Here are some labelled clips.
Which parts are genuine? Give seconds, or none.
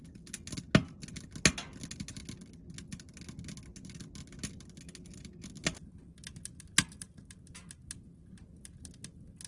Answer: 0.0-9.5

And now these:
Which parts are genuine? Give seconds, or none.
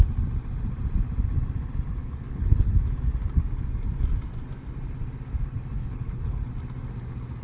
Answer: 0.0-2.0; 2.7-5.8; 6.5-7.4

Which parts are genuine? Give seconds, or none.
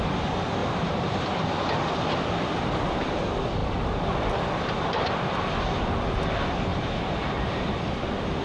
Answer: 0.0-0.6; 1.2-6.7; 8.0-8.4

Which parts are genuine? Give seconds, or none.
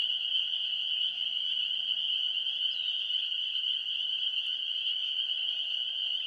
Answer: 0.0-3.2; 4.3-5.0; 5.4-6.3